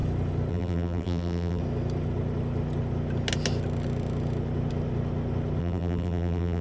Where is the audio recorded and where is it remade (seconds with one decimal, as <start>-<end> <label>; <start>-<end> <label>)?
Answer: 0.0-0.5 recorded; 0.5-1.6 remade; 1.6-5.6 recorded; 5.6-6.6 remade